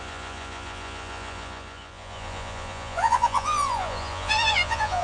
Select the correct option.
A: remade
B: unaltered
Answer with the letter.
A